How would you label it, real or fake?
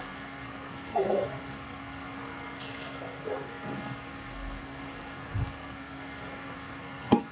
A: fake